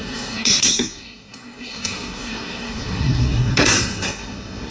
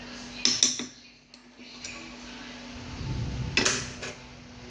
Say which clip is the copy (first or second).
first